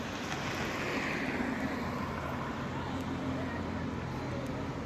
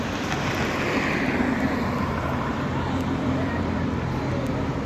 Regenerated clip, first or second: second